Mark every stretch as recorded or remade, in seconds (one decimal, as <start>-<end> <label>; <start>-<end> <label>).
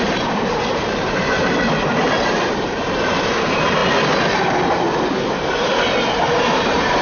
0.0-3.8 remade; 3.8-6.1 recorded; 6.1-7.0 remade